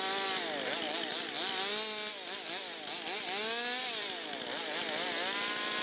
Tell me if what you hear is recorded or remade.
recorded